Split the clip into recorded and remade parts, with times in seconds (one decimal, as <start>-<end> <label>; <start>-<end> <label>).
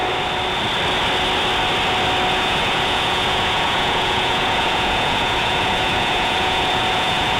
0.0-2.3 recorded; 2.3-7.4 remade